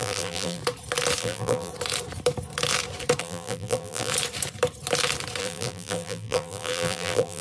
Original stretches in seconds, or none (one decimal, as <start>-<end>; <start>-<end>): 0.6-1.2; 1.7-3.2; 4.1-5.4